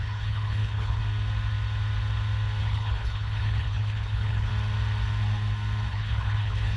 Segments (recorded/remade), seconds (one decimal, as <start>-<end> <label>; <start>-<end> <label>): 0.0-1.0 remade; 1.0-2.6 recorded; 2.6-4.5 remade; 4.5-5.9 recorded; 5.9-6.8 remade

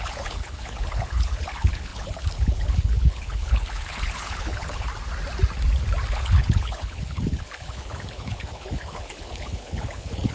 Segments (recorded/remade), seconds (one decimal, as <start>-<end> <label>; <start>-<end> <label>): 0.0-4.9 remade; 4.9-6.1 recorded; 6.1-10.3 remade

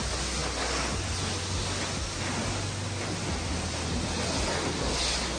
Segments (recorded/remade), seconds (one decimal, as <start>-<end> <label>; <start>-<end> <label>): 0.0-5.4 recorded

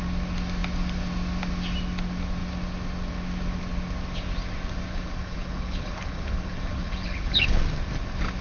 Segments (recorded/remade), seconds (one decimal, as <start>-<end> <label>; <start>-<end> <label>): 0.0-4.9 recorded; 4.9-7.6 remade; 7.6-8.4 recorded

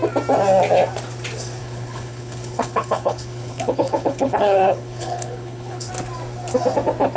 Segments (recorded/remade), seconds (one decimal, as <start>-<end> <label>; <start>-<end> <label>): 0.0-1.6 recorded; 1.6-5.9 remade; 5.9-7.2 recorded

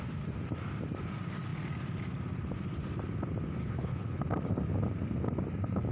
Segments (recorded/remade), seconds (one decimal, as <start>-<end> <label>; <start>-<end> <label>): 0.0-3.6 recorded; 3.6-4.2 remade; 4.2-5.9 recorded

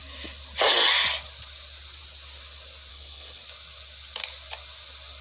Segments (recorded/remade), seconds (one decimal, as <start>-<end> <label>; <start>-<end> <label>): 0.0-2.9 recorded; 2.9-3.4 remade; 3.4-5.2 recorded

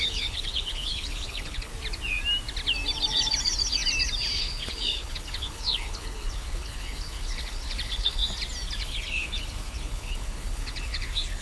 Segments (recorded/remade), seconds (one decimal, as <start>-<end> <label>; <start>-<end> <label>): 0.0-1.7 remade; 1.7-4.4 recorded; 4.4-8.2 remade; 8.2-8.8 recorded; 8.8-11.4 remade